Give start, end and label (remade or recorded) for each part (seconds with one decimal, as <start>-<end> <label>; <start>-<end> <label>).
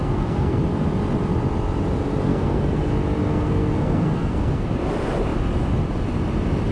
0.0-0.6 remade; 0.6-2.3 recorded; 2.3-2.9 remade; 2.9-3.3 recorded; 3.3-4.7 remade; 4.7-6.7 recorded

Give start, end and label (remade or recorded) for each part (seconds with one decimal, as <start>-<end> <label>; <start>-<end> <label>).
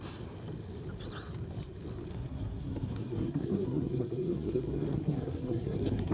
0.0-2.1 recorded; 2.1-6.1 remade